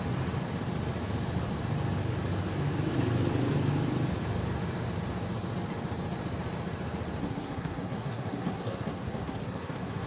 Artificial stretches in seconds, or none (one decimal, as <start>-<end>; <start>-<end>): 7.2-10.1

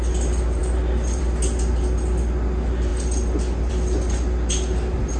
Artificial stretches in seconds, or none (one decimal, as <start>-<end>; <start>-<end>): none

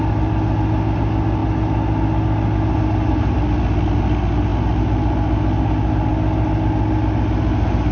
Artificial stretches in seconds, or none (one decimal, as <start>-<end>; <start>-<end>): none

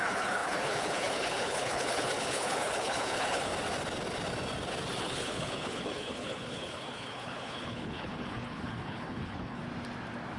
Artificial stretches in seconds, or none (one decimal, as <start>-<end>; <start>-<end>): 0.0-3.5; 5.0-9.6

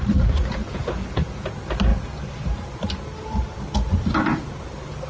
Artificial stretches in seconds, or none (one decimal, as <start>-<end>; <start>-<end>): 0.6-1.5

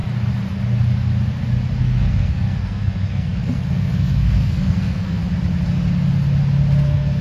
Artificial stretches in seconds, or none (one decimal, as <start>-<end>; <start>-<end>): 1.8-5.2; 6.8-7.2

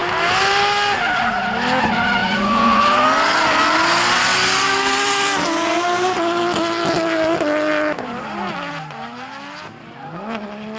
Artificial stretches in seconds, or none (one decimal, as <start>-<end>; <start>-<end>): 2.2-2.8

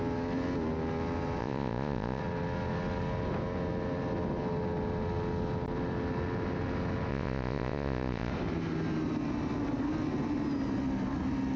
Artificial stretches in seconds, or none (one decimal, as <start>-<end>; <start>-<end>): 1.4-2.2; 7.1-8.3